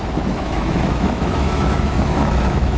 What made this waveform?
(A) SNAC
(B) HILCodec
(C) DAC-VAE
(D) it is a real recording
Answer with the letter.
C